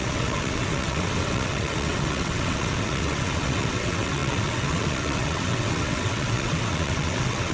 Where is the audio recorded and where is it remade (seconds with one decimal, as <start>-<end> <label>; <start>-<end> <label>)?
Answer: 0.0-7.5 remade

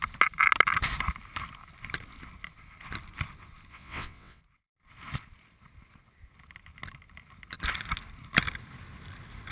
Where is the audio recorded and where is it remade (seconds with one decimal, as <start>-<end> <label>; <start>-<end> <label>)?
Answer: 0.0-3.7 recorded; 3.7-4.4 remade; 4.4-9.5 recorded

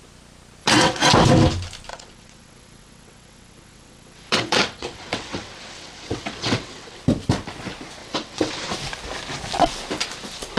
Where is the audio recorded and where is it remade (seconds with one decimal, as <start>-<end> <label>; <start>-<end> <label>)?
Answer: 0.0-0.6 recorded; 0.6-1.1 remade; 1.1-1.9 recorded; 1.9-7.0 remade; 7.0-8.0 recorded; 8.0-8.7 remade; 8.7-10.6 recorded

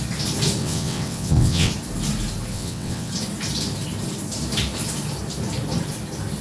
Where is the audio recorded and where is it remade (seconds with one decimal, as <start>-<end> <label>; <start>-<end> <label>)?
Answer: 0.0-0.6 recorded; 0.6-1.7 remade; 1.7-2.5 recorded; 2.5-3.1 remade; 3.1-6.4 recorded

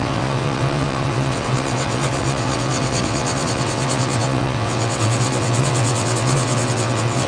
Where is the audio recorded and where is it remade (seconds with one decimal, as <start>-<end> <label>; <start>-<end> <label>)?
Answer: 0.0-7.3 remade

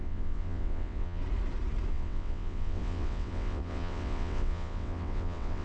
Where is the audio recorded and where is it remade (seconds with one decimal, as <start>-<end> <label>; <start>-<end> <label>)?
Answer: 0.0-1.2 remade; 1.2-1.9 recorded; 1.9-5.6 remade

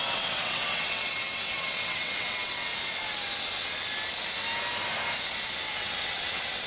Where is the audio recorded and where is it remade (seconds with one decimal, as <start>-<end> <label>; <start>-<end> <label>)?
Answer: 0.0-2.7 remade; 2.7-5.8 recorded; 5.8-6.7 remade

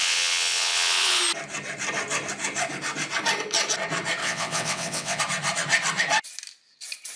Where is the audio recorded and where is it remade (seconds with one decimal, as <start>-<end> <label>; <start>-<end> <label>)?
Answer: 0.0-1.2 remade; 1.2-4.2 recorded; 4.2-5.2 remade; 5.2-7.2 recorded